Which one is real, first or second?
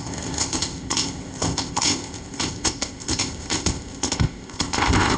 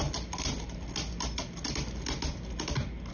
second